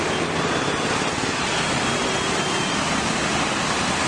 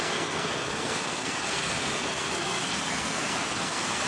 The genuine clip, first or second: first